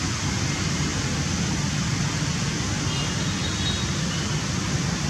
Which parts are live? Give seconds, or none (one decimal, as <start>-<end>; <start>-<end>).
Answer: 0.0-5.1